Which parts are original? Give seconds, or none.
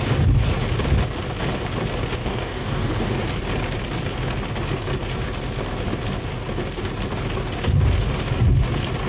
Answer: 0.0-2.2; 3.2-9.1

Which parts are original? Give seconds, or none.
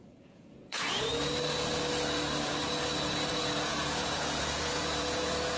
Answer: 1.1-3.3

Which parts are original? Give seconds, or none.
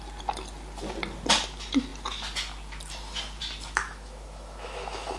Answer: 0.0-3.8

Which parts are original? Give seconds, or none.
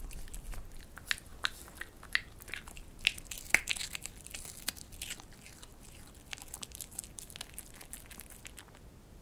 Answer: 0.0-9.2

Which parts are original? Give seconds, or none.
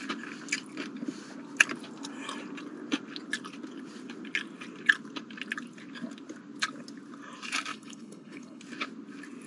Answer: 0.0-7.7; 8.6-9.5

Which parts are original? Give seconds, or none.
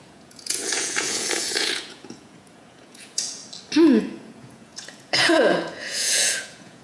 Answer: 3.4-4.0